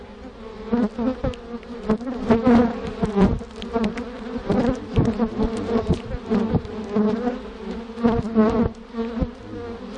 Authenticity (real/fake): real